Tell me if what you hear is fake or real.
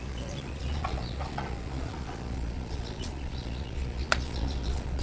fake